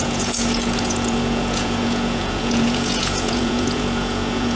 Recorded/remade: remade